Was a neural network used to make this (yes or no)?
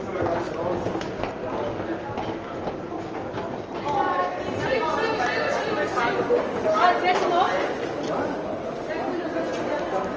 no